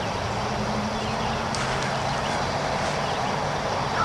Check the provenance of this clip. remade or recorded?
recorded